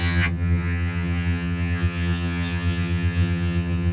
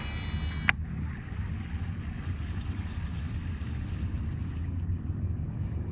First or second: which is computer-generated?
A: first